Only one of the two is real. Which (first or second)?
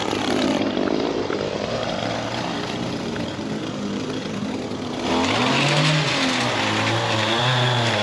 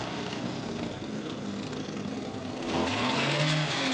first